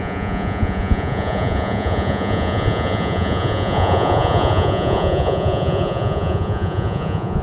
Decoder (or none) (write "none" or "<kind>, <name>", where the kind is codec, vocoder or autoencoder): vocoder, Vocos